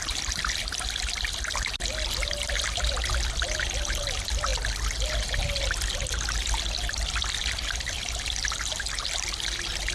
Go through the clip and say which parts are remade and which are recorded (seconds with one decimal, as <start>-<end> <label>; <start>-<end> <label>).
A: 0.0-9.9 recorded